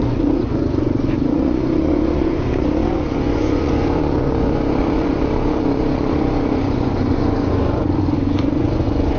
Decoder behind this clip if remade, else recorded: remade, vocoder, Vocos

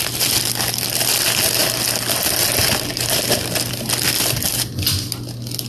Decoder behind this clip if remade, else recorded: recorded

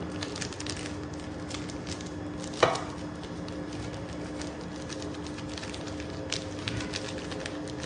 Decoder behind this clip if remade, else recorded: recorded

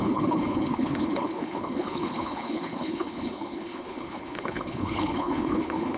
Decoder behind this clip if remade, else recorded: remade, codec, HILCodec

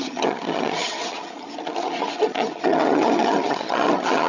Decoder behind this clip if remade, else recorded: remade, vocoder, HiFi-GAN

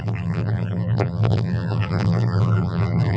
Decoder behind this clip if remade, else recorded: remade, vocoder, BigVGAN v2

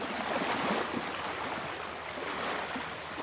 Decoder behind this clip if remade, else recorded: recorded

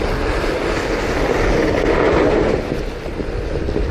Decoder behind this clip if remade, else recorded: recorded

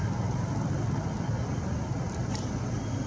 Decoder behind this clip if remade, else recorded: recorded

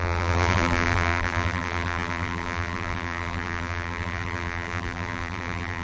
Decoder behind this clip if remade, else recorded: remade, vocoder, BigVGAN v2